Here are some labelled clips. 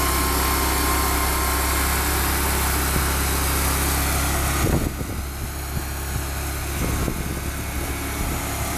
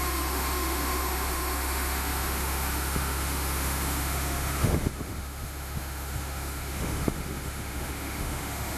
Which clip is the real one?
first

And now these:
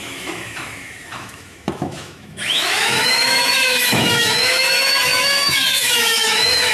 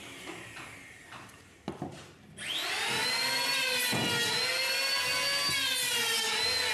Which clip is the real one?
second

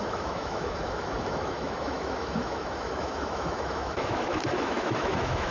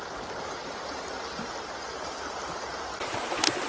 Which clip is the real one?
second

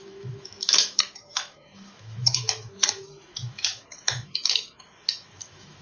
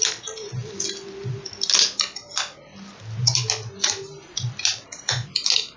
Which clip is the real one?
second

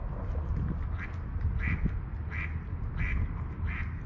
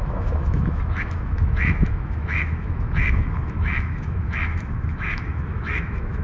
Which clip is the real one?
first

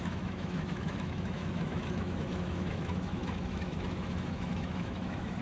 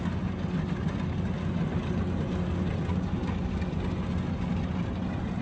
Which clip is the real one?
second